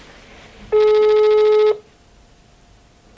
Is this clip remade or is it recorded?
recorded